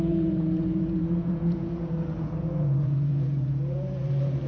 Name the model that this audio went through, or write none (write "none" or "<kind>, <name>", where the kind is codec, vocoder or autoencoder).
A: vocoder, Vocos